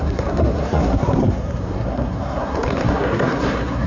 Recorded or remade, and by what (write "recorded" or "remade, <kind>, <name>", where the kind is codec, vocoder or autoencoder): remade, codec, SNAC